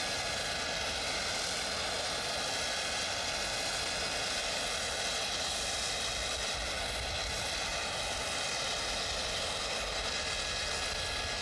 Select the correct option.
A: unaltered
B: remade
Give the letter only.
A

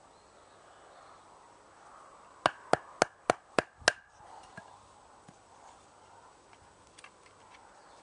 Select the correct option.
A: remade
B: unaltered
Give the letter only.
B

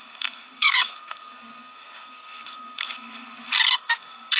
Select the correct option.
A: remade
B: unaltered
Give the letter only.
A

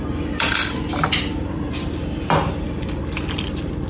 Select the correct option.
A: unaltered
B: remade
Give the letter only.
A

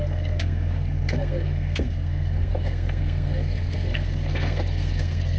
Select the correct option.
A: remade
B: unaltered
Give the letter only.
A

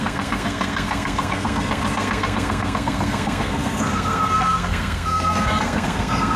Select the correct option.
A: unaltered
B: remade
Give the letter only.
B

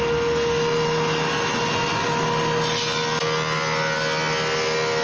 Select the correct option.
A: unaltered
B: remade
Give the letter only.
A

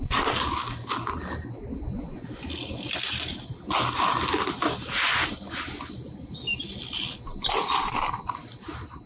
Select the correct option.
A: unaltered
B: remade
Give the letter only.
A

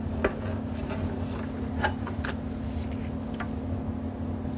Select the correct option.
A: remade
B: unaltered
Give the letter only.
B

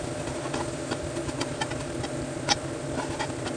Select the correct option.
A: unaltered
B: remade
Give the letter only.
A